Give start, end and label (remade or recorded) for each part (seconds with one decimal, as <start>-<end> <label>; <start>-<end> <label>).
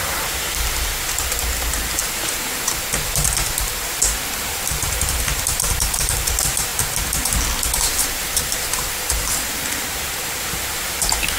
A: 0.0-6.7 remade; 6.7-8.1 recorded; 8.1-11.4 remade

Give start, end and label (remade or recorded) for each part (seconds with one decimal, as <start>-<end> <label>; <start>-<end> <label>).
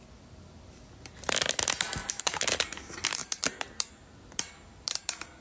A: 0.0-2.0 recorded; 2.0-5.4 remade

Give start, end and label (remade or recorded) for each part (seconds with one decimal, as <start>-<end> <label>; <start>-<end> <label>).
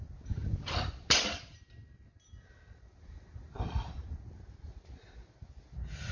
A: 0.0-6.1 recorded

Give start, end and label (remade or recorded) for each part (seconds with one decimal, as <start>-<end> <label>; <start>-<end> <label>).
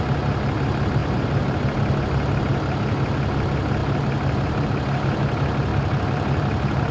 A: 0.0-1.0 recorded; 1.0-1.6 remade; 1.6-3.8 recorded; 3.8-4.7 remade; 4.7-5.7 recorded; 5.7-6.9 remade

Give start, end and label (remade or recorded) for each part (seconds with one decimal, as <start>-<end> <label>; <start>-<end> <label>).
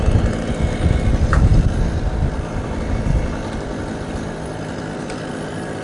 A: 0.0-5.8 recorded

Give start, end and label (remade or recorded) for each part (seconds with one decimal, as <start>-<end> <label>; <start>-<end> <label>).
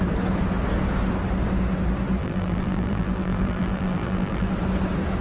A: 0.0-2.2 recorded; 2.2-4.5 remade; 4.5-5.2 recorded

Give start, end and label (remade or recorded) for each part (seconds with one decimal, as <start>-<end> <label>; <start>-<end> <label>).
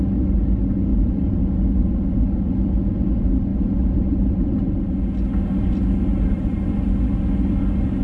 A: 0.0-0.9 recorded; 0.9-1.4 remade; 1.4-3.5 recorded; 3.5-4.9 remade; 4.9-6.1 recorded; 6.1-6.8 remade; 6.8-8.0 recorded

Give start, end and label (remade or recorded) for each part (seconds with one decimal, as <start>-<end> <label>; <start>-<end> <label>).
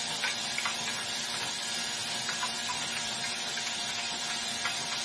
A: 0.0-5.0 recorded